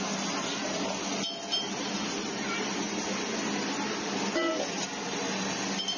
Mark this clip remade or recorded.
recorded